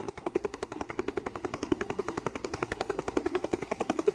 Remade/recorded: remade